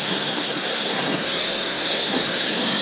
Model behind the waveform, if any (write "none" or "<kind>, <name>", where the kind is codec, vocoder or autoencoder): codec, SNAC